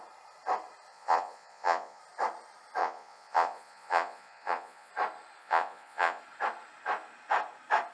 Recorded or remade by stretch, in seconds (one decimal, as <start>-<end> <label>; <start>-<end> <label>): 0.0-0.9 recorded; 0.9-2.0 remade; 2.0-2.8 recorded; 2.8-4.9 remade; 4.9-5.4 recorded; 5.4-6.2 remade; 6.2-7.9 recorded